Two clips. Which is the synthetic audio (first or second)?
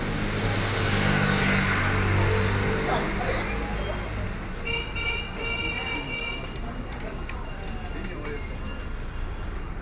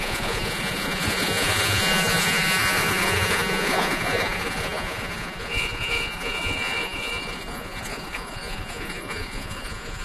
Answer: second